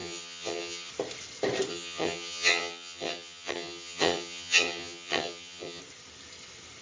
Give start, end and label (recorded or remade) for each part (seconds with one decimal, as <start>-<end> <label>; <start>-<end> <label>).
0.0-0.9 remade; 0.9-1.7 recorded; 1.7-5.8 remade; 5.8-6.8 recorded